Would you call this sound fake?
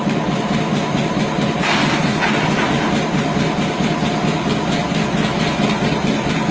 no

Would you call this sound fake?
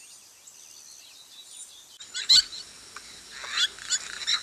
no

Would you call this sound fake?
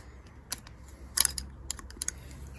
no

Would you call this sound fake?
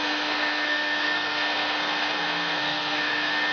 yes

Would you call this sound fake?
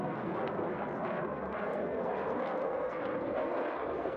yes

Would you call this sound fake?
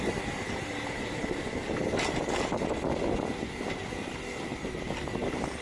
no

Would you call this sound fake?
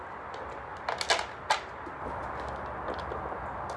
no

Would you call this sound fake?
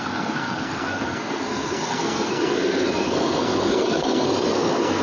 yes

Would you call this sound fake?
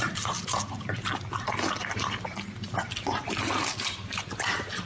no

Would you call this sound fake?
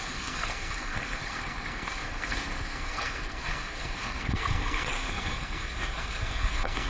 yes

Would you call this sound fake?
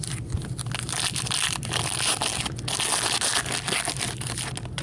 no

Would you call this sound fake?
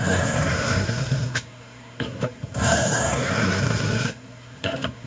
yes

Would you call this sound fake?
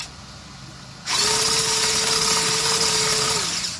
no